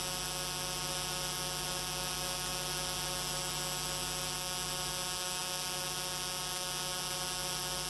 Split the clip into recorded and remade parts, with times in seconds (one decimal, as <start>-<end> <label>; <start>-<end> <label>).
0.0-7.9 recorded